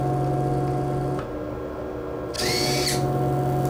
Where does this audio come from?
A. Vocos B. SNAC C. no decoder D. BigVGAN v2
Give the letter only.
C